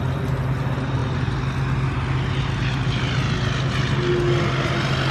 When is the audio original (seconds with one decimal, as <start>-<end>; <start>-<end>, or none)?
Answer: 0.0-5.1